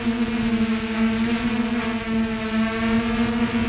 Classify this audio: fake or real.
real